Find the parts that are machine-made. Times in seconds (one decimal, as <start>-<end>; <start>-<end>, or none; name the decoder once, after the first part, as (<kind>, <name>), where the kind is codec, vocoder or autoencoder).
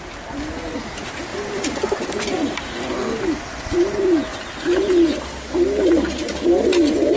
1.3-2.9 (vocoder, BigVGAN v2)